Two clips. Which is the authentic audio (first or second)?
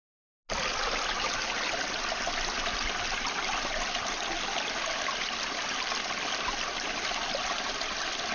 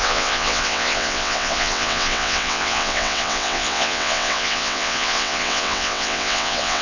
first